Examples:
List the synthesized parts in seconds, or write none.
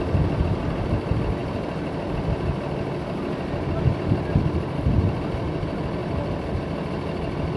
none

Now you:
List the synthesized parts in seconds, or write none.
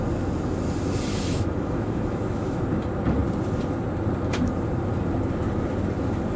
1.1-2.6 (autoencoder, DAC-VAE)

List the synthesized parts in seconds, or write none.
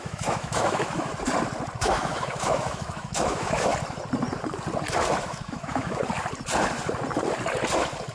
0.0-1.1 (autoencoder, DAC-VAE); 1.8-3.7; 5.2-6.0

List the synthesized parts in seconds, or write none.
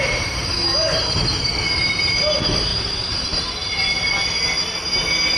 none